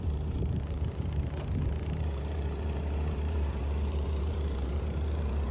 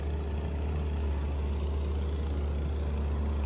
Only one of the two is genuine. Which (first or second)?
second